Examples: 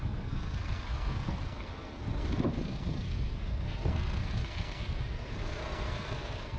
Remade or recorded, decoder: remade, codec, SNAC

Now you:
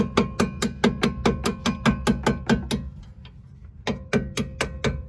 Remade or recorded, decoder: recorded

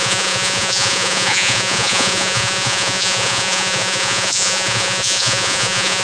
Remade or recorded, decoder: remade, vocoder, Vocos